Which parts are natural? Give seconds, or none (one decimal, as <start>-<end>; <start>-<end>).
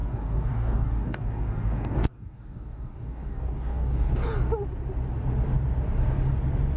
4.1-6.8